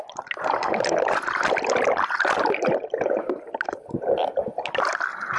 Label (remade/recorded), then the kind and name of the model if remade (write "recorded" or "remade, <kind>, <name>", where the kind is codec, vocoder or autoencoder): recorded